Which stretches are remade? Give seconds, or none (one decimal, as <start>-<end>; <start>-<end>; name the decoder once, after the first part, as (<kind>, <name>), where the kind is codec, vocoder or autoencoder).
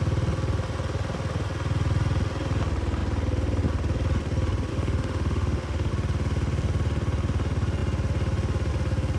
4.7-5.9 (autoencoder, DAC-VAE)